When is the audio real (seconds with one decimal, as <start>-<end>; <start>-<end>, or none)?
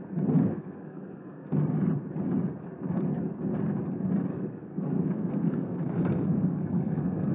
0.0-0.5; 1.5-4.3